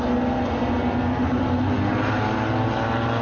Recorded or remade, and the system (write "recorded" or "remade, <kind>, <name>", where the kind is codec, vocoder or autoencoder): recorded